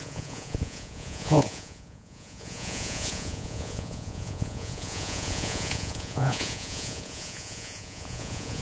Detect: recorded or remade remade